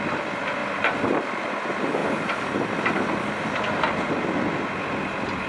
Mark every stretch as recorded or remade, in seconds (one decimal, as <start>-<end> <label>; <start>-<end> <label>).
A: 0.0-5.5 recorded